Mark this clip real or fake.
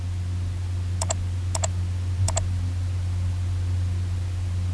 real